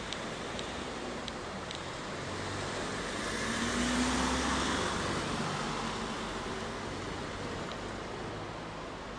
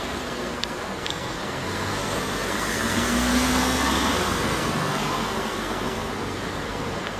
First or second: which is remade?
second